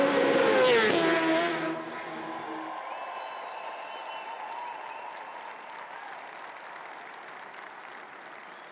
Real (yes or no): yes